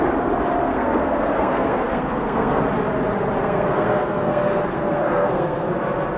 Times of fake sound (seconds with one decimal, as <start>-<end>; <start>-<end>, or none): 0.6-2.6; 3.4-5.7